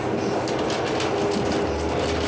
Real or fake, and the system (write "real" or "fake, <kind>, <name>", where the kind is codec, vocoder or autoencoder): real